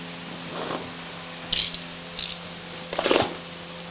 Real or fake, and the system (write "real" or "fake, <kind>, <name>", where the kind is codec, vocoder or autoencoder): real